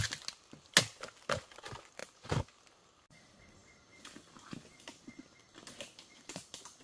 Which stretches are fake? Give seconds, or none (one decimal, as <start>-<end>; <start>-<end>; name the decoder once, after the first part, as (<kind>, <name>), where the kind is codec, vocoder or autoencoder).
none